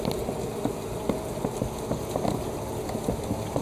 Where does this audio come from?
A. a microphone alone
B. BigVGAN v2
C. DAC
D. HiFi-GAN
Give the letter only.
A